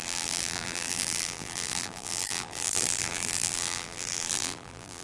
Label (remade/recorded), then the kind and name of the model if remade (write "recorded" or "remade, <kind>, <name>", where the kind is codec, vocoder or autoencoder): remade, vocoder, BigVGAN v2